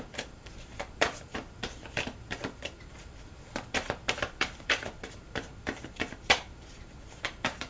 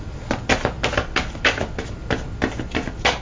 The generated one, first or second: first